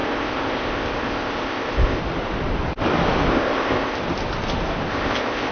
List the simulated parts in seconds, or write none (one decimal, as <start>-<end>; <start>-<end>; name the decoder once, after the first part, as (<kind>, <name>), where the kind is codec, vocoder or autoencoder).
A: 0.0-2.0 (codec, ZipCodec); 3.3-4.0; 4.9-5.5